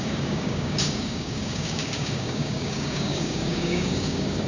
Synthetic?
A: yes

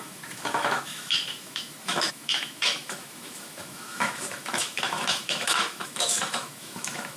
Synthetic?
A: yes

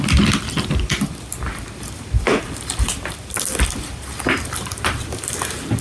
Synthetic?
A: no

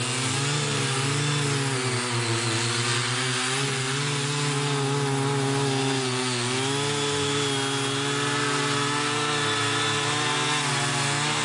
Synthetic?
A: no